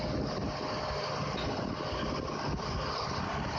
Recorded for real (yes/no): yes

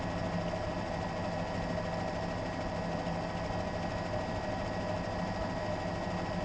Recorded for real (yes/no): yes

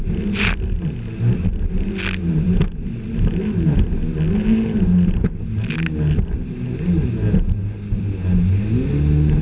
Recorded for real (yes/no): yes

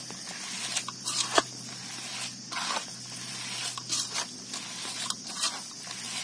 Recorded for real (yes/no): yes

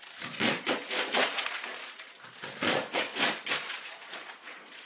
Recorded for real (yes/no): no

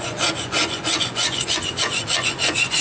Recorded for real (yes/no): no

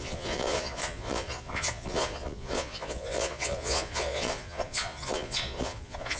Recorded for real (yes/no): no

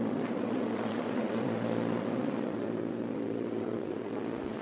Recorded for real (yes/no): no